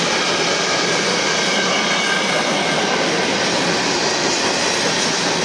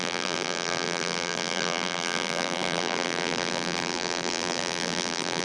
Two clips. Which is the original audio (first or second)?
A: first